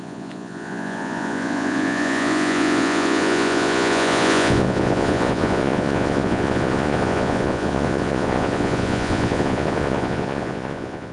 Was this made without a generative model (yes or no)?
no